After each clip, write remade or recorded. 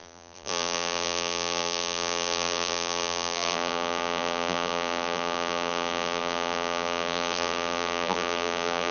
remade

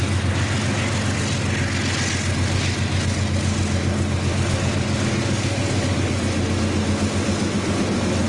recorded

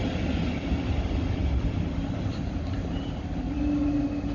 recorded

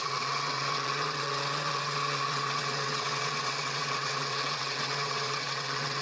remade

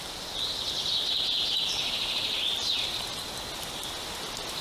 recorded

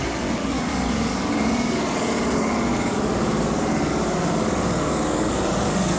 remade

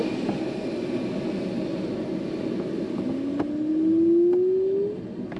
recorded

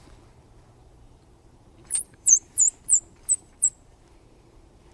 remade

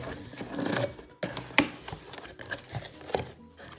recorded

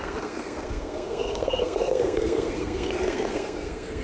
remade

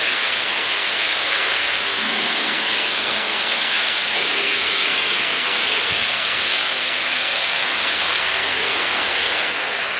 remade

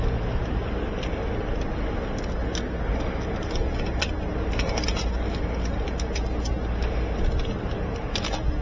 recorded